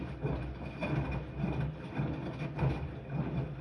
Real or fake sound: real